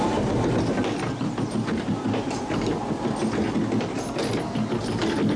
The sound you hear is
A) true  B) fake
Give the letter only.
A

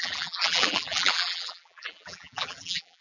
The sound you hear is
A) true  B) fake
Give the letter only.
B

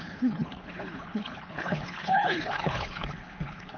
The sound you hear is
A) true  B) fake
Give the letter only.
B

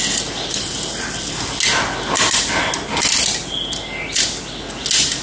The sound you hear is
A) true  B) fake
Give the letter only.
A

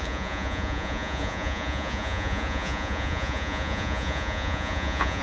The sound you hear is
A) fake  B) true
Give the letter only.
A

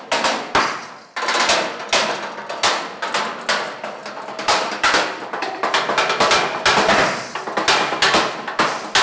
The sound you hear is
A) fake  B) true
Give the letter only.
B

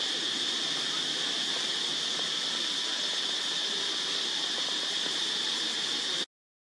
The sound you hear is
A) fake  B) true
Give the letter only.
B